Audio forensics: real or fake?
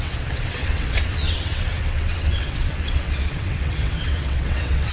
fake